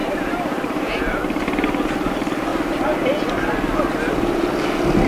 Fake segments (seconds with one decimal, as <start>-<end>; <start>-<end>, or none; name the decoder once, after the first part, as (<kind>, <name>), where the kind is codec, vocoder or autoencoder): 0.0-1.2 (vocoder, BigVGAN v2)